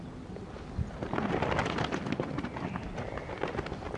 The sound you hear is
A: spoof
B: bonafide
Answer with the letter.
B